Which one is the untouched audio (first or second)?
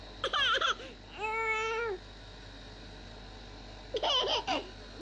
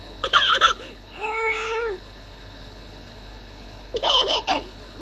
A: first